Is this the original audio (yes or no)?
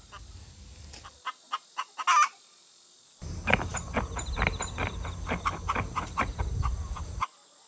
yes